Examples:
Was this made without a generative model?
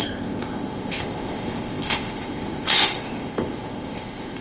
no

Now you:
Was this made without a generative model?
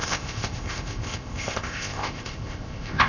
no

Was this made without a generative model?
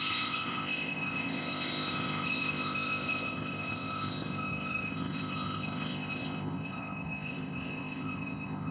no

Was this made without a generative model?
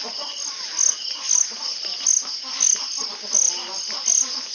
yes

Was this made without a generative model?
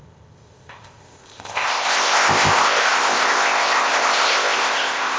no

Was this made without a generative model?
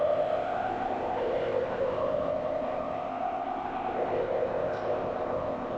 no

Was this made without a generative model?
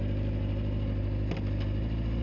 yes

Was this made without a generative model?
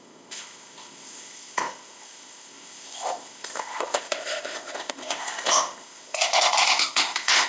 no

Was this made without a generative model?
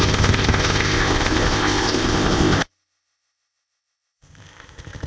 no